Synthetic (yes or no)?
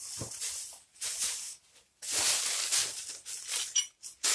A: no